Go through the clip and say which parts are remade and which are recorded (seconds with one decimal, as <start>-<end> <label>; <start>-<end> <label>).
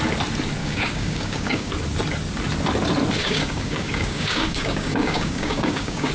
0.0-0.6 recorded; 0.6-1.7 remade; 1.7-3.2 recorded; 3.2-6.1 remade